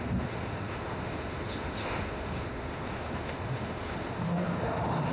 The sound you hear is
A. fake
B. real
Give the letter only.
A